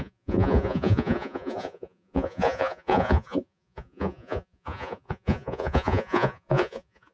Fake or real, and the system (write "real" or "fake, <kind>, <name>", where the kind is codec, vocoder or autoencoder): fake, vocoder, Vocos